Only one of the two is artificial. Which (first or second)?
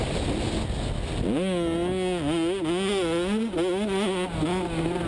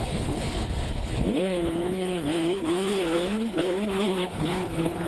second